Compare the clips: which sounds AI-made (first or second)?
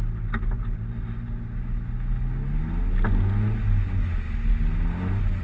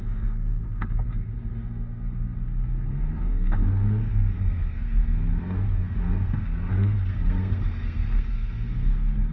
second